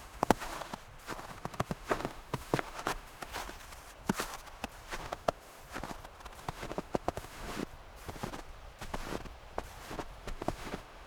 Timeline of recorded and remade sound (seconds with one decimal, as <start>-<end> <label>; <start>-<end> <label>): 0.0-0.7 remade; 0.7-1.3 recorded; 1.3-3.3 remade; 3.3-5.0 recorded; 5.0-5.6 remade; 5.6-6.4 recorded; 6.4-7.6 remade; 7.6-10.2 recorded; 10.2-11.1 remade